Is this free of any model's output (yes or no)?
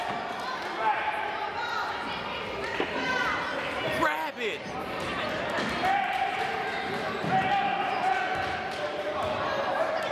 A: yes